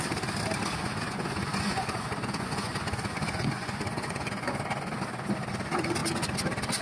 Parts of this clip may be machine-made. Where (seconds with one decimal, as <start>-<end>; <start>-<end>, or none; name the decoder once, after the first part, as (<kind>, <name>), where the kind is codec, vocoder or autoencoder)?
0.8-4.9 (vocoder, Vocos)